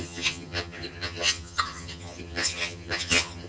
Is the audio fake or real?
fake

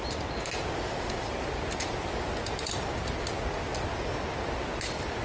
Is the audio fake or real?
real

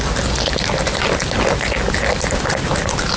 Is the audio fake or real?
real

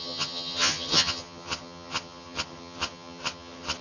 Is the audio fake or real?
fake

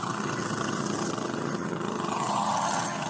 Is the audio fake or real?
fake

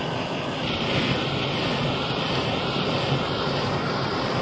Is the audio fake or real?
real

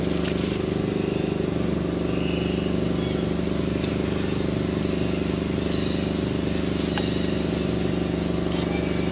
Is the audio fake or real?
real